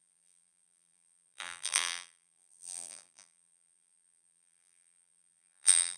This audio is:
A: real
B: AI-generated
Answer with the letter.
B